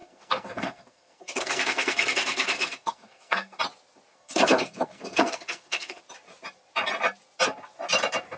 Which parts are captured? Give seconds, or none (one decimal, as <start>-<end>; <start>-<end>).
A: 3.6-4.1; 6.0-8.4